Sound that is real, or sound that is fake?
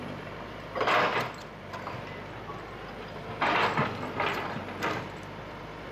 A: fake